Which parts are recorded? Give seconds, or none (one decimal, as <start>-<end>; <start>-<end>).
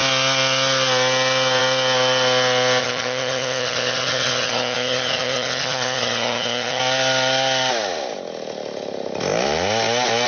0.0-2.8; 6.8-10.3